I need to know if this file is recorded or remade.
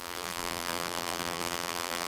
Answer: remade